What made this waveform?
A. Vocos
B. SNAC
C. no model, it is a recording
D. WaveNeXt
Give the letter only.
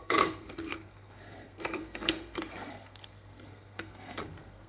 B